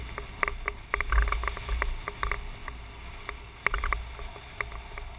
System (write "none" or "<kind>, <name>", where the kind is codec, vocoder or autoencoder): none